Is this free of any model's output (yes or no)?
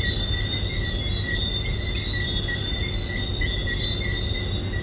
yes